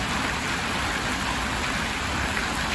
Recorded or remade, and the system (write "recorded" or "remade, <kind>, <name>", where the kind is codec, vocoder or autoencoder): recorded